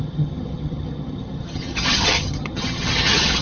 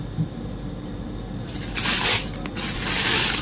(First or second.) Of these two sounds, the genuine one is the second